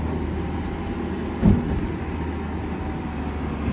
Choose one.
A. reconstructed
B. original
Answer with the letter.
B